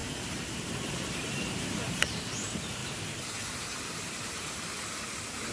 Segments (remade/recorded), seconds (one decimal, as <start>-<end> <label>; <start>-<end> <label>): 0.0-2.8 remade; 2.8-5.5 recorded